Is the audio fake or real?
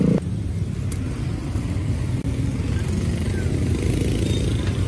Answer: real